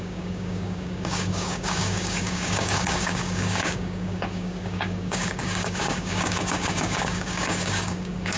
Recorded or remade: remade